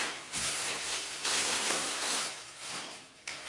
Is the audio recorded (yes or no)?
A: no